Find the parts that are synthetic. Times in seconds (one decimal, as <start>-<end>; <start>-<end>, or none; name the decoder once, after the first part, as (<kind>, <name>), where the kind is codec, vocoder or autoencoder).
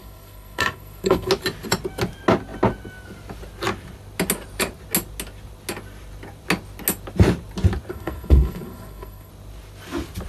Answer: 0.0-1.3 (codec, SNAC); 7.9-9.3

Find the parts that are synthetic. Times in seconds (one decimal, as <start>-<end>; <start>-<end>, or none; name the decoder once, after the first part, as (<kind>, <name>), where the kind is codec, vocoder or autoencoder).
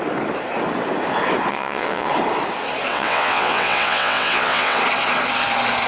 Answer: 1.5-2.1 (vocoder, WaveNeXt); 2.9-4.8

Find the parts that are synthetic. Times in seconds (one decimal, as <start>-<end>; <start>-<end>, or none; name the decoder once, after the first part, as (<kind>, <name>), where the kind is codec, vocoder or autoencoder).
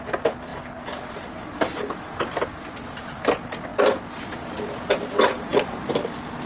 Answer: none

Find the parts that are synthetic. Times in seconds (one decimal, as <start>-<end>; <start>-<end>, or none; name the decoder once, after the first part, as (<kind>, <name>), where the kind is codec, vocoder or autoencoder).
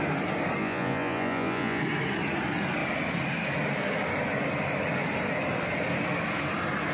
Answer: 0.6-1.8 (vocoder, Vocos)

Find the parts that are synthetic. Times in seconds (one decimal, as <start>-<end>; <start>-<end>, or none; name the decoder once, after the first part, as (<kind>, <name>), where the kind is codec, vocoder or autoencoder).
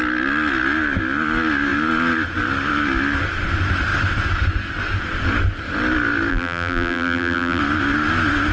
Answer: 6.3-7.6 (vocoder, BigVGAN v2)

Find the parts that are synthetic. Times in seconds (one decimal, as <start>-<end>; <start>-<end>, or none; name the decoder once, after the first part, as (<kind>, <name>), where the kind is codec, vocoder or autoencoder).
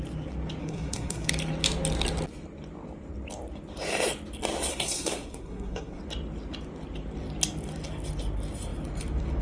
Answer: 0.6-1.3 (codec, SNAC); 4.7-6.0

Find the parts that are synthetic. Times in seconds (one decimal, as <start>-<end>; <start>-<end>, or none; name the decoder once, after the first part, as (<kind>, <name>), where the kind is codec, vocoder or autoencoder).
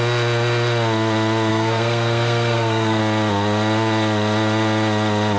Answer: 1.5-3.0 (codec, SNAC)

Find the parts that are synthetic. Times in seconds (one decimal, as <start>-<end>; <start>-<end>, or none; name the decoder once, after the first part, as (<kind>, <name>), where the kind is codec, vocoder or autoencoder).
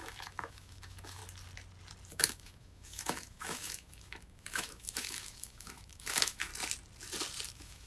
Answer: 0.0-1.2 (autoencoder, DAC-VAE); 2.1-6.5; 7.5-7.9